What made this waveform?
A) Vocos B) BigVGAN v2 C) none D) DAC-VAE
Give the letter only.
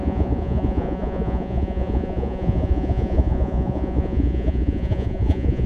A